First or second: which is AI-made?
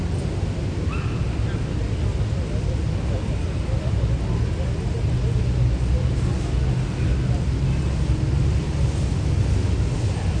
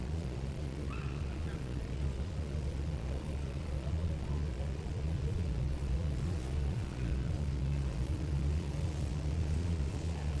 second